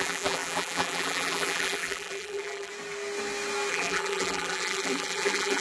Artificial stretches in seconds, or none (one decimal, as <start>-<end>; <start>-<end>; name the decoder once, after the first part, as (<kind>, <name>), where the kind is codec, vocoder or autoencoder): 0.0-2.7 (vocoder, BigVGAN v2); 3.7-5.6